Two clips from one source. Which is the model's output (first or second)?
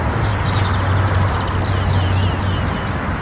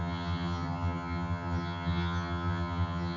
second